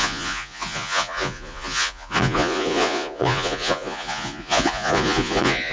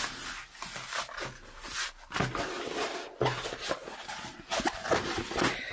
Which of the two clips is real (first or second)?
second